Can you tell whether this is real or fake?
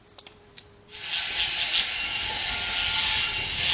real